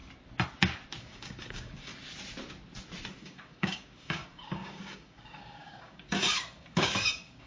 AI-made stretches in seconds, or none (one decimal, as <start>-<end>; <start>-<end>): 1.0-1.9; 3.2-7.5